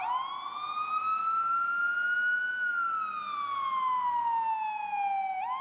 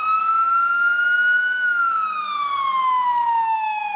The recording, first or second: first